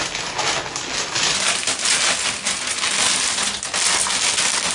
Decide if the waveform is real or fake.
real